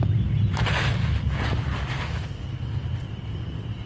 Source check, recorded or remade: recorded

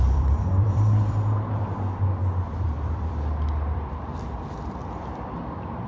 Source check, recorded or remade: remade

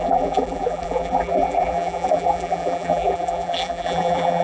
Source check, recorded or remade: remade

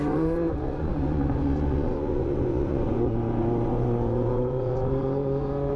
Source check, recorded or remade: remade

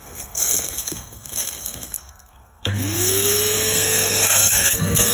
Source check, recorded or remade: remade